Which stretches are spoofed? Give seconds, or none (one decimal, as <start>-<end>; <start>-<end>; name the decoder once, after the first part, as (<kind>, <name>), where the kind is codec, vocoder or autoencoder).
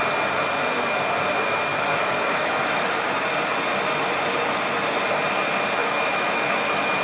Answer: 1.7-2.9 (autoencoder, DAC-VAE); 5.8-7.0